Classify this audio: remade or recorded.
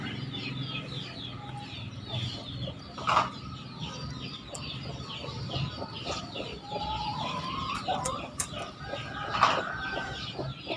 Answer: recorded